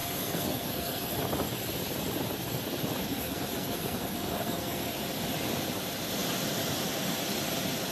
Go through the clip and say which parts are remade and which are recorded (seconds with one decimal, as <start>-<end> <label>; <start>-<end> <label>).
0.0-1.1 remade; 1.1-3.0 recorded; 3.0-4.9 remade; 4.9-7.9 recorded